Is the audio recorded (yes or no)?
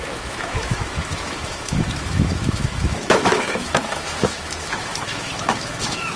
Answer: no